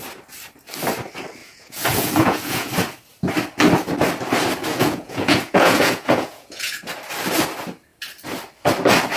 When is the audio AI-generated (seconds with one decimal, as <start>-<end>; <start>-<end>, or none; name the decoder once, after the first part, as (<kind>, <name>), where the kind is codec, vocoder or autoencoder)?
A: 1.4-2.7 (vocoder, Vocos); 4.7-6.8